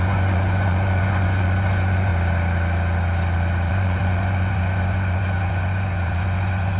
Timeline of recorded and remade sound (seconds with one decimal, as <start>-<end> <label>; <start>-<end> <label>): 0.0-2.1 remade; 2.1-3.7 recorded; 3.7-6.8 remade